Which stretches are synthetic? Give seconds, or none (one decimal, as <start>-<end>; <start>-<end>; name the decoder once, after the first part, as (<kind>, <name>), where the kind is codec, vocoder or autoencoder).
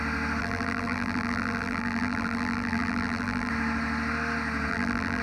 0.4-3.5 (vocoder, BigVGAN v2); 4.7-5.2